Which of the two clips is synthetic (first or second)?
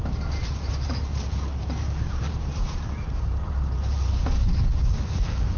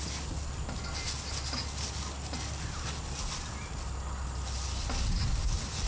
first